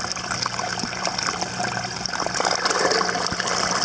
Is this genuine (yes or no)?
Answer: yes